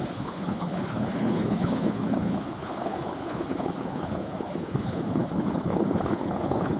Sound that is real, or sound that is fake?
fake